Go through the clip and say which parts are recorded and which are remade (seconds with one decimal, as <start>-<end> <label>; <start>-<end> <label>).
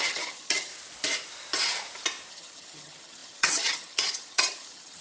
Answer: 0.0-0.7 remade; 0.7-2.3 recorded; 2.3-5.0 remade